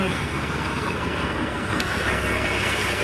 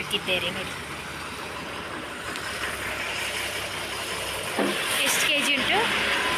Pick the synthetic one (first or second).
first